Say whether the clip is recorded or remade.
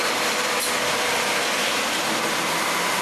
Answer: recorded